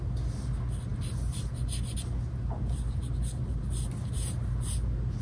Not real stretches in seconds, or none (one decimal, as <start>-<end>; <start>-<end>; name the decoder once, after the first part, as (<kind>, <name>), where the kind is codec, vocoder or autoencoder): none